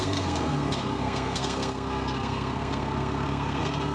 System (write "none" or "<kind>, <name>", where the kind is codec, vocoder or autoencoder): codec, SNAC